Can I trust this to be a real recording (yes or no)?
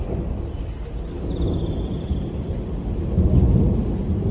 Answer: yes